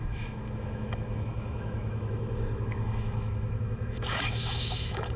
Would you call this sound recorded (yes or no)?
no